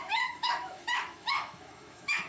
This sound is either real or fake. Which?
fake